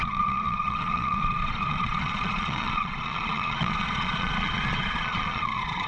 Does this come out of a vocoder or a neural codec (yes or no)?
yes